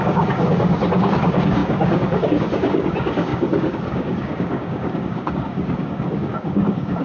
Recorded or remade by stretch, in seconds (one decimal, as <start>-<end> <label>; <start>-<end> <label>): 0.0-7.0 remade